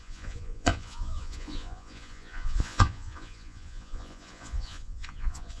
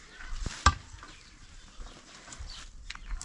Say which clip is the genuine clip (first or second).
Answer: second